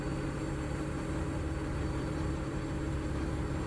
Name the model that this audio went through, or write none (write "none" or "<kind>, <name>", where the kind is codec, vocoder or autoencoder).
vocoder, BigVGAN v2